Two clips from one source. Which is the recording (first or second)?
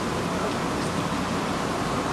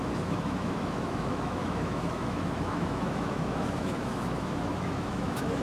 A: first